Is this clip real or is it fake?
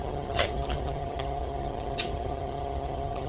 fake